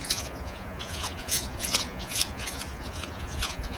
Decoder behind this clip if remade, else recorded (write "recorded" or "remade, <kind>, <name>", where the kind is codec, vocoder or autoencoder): remade, vocoder, Vocos